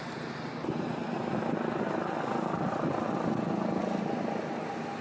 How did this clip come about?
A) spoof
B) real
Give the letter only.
B